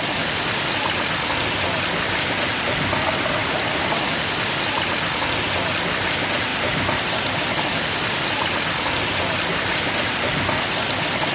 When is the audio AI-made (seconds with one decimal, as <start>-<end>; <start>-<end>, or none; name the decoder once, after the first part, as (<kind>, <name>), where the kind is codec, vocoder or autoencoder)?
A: 3.4-4.0 (vocoder, BigVGAN v2); 6.5-7.6; 9.5-10.1